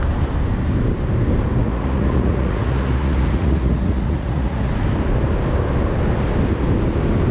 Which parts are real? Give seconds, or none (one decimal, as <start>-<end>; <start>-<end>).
0.0-1.6; 4.7-7.3